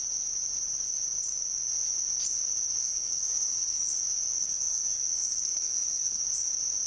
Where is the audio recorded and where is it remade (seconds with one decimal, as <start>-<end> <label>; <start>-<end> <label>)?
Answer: 0.0-2.8 recorded; 2.8-3.9 remade; 3.9-4.4 recorded; 4.4-6.2 remade; 6.2-6.9 recorded